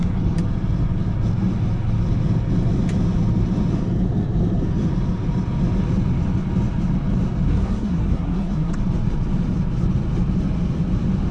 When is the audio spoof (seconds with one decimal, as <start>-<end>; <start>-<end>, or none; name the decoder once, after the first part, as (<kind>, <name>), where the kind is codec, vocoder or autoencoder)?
7.5-8.7 (codec, SNAC)